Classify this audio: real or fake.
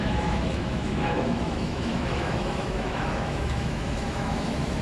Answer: fake